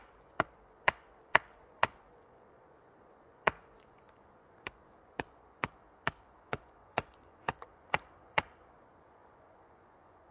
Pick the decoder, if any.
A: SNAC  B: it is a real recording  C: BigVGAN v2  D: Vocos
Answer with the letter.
D